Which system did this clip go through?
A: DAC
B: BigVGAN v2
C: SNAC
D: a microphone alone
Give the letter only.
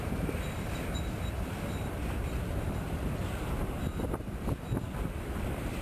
B